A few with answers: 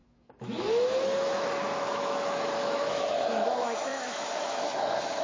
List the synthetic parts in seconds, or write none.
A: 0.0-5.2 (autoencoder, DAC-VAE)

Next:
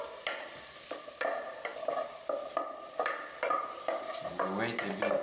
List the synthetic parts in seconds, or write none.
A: none

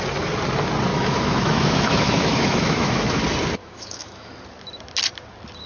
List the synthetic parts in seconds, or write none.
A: 0.9-3.2 (autoencoder, DAC-VAE); 3.6-4.3